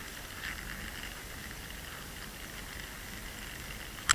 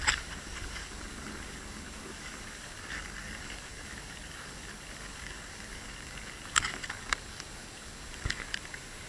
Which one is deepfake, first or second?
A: second